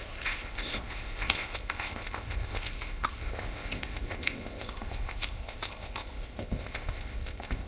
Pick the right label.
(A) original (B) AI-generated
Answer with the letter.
B